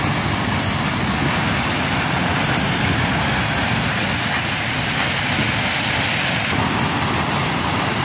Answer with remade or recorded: recorded